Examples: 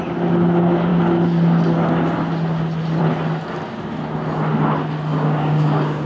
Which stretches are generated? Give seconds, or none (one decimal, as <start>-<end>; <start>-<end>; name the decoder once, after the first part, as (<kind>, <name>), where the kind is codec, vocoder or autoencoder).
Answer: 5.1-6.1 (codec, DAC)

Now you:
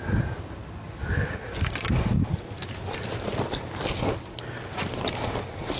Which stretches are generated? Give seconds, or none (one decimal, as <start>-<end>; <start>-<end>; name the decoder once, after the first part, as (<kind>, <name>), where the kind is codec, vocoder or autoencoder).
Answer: none

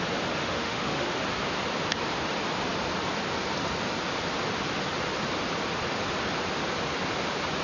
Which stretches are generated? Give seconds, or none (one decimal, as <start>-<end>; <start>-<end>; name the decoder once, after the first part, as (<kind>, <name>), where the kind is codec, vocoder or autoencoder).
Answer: 0.4-1.2 (autoencoder, DAC-VAE)